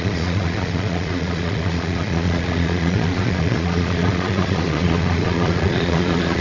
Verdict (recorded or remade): remade